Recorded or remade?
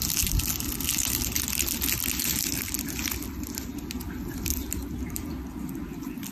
recorded